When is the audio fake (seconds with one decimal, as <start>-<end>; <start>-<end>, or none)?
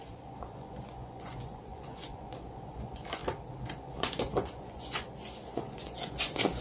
0.0-3.2; 3.7-6.6